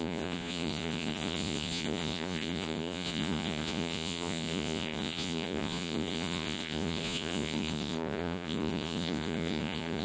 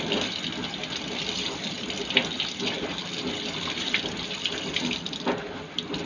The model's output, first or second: first